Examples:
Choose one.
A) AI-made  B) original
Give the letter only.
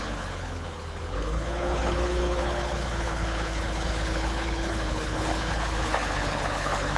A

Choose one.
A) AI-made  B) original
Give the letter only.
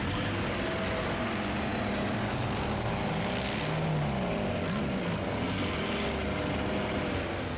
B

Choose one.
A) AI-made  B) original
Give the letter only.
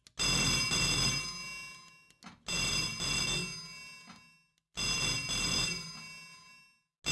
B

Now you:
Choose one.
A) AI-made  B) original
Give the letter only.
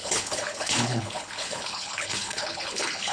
A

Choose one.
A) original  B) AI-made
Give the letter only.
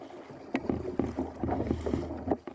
A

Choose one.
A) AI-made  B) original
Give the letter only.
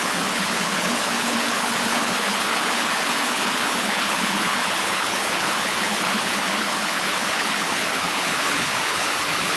A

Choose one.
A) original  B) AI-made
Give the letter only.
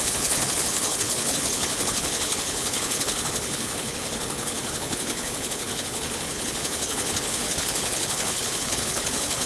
B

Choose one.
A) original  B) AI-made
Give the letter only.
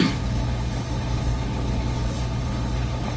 B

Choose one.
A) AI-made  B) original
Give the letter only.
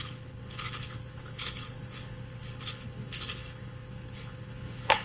A